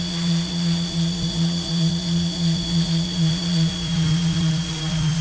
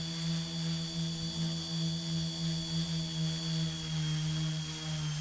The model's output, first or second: first